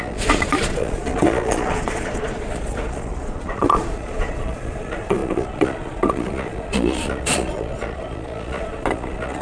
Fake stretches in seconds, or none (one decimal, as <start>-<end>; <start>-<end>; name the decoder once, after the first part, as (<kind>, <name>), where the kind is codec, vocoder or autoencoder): 0.0-9.4 (vocoder, Vocos)